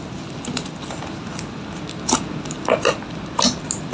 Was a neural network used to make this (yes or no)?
no